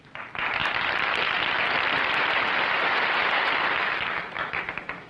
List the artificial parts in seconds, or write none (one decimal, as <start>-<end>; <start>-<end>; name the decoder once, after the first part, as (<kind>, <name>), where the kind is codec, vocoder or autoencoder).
3.8-5.1 (autoencoder, DAC-VAE)